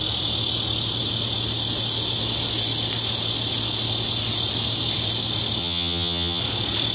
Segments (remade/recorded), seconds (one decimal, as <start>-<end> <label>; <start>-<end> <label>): 0.0-5.6 recorded; 5.6-6.4 remade; 6.4-6.9 recorded